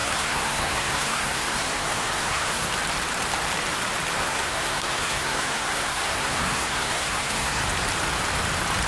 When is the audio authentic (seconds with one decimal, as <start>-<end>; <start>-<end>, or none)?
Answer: 2.7-4.2; 7.6-8.9